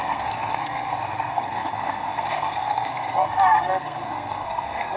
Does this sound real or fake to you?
fake